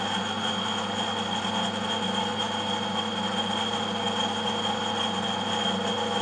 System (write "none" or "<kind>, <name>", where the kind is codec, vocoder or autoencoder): none